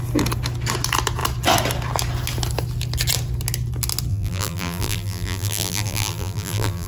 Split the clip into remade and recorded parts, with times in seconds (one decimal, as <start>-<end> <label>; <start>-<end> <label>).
0.0-4.1 recorded; 4.1-6.9 remade